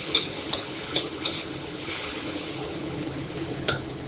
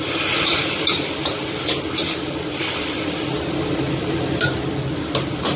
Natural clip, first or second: second